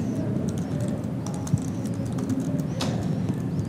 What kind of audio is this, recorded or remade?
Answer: recorded